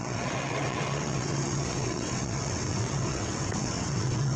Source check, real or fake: fake